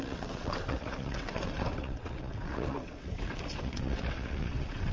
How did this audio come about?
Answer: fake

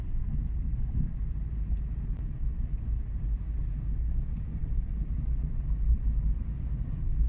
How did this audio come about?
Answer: real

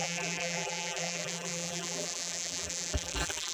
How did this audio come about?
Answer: fake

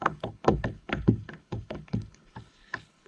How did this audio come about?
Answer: fake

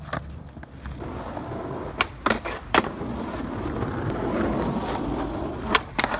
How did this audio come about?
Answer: real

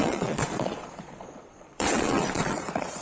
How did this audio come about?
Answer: fake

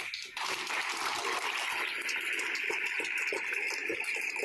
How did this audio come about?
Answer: real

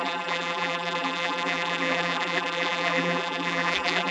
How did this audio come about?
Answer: fake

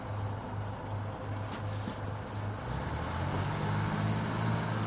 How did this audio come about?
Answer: real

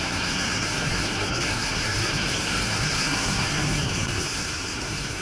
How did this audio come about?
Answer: fake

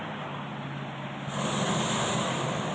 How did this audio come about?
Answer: real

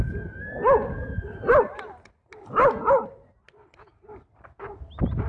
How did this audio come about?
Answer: real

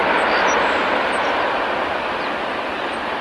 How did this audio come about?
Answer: real